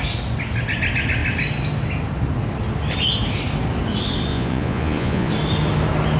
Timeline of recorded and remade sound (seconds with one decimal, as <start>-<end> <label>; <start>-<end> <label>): 0.0-4.3 recorded; 4.3-5.3 remade; 5.3-6.2 recorded